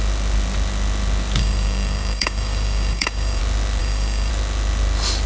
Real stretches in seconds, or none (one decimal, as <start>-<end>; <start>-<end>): 0.0-1.4; 3.4-3.8; 4.3-5.3